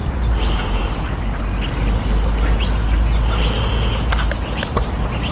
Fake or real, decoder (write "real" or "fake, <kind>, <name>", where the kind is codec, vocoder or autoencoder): real